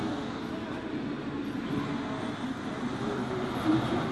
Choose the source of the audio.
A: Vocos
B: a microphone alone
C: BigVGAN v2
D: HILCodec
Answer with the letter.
B